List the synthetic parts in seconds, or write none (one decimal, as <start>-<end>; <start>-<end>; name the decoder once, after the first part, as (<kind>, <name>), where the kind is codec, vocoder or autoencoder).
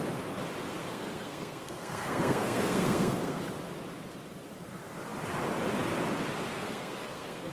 0.8-3.4 (codec, SNAC); 6.5-7.5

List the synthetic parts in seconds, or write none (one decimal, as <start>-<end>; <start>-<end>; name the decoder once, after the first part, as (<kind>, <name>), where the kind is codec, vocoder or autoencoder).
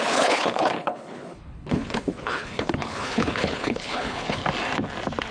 0.0-4.4 (codec, HILCodec)